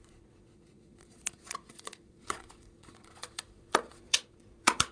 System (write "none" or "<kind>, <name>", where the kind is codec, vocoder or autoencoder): vocoder, Vocos